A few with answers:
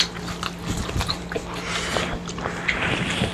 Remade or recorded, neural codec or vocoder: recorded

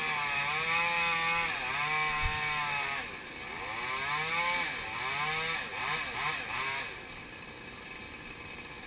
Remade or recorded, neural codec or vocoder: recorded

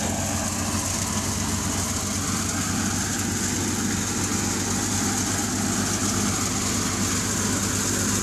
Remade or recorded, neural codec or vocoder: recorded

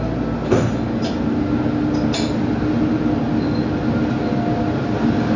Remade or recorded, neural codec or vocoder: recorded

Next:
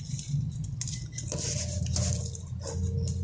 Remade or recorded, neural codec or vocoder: recorded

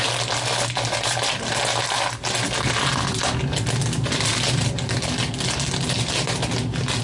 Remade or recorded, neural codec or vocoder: recorded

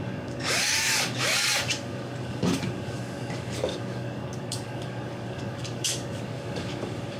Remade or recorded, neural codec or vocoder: remade, codec, DAC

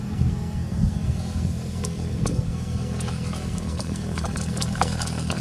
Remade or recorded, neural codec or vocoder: remade, codec, SNAC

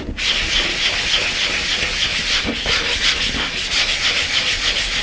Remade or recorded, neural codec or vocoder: recorded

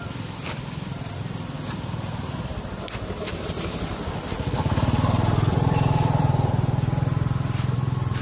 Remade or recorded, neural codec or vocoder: remade, vocoder, BigVGAN v2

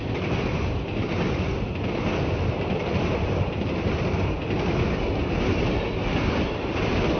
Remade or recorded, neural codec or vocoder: recorded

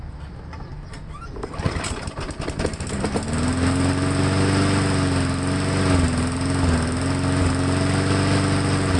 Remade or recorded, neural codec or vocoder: recorded